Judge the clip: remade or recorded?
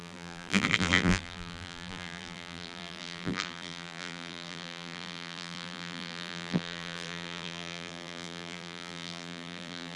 remade